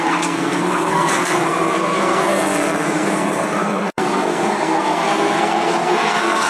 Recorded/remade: remade